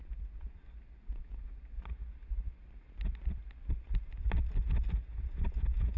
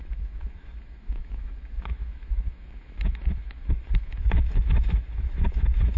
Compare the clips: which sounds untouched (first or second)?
first